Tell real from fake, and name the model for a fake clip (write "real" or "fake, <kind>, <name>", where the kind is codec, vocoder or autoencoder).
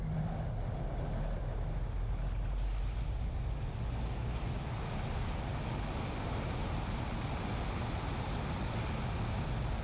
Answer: real